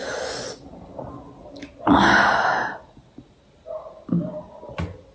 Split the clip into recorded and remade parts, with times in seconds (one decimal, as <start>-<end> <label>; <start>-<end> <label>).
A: 0.0-5.1 recorded